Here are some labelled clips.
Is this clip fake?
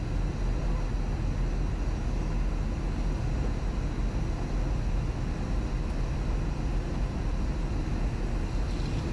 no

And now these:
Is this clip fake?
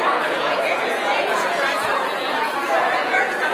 yes